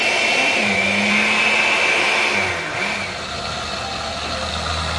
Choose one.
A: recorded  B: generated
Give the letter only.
A